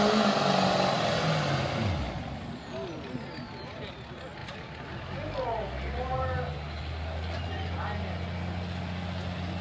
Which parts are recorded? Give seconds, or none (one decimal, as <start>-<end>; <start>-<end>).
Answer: 0.0-9.6